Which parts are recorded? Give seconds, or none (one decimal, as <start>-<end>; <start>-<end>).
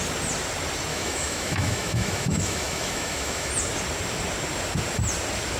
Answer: 0.0-0.9; 3.5-5.6